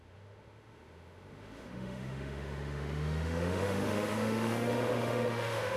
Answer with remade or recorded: remade